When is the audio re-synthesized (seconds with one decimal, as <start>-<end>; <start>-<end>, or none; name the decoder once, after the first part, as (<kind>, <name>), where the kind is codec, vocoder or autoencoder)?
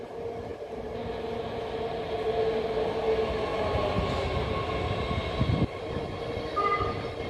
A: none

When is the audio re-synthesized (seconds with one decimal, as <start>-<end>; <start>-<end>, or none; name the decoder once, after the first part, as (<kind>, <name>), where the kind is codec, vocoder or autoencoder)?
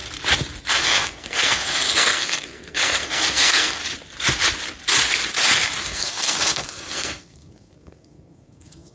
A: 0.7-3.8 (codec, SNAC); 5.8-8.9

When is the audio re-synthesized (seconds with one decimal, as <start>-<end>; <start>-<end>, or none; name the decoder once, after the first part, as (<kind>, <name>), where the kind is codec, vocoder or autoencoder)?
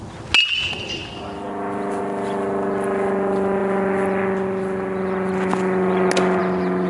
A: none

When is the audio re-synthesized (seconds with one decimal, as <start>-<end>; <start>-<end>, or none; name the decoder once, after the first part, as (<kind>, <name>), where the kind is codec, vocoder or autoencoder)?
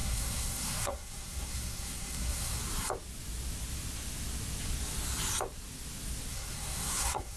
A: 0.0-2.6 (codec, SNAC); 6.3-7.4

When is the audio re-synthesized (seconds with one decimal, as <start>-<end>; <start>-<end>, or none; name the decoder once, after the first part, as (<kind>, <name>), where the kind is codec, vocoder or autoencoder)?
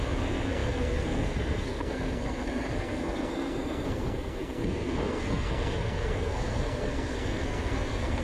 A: 0.0-8.2 (codec, SNAC)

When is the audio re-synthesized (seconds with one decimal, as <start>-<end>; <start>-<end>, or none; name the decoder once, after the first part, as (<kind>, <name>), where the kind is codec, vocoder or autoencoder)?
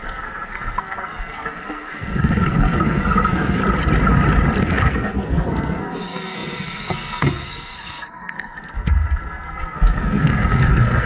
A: 0.0-3.6 (codec, SNAC); 4.6-11.1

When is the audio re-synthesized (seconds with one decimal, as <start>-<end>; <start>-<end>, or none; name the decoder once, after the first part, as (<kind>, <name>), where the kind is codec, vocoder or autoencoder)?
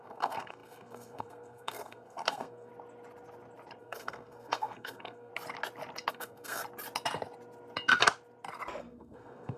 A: 0.0-2.7 (codec, SNAC); 3.8-5.3; 6.1-6.6; 8.8-9.6